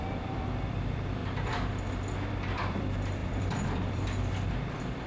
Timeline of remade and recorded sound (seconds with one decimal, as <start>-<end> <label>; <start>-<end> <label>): 0.0-1.2 remade; 1.2-2.3 recorded; 2.3-5.1 remade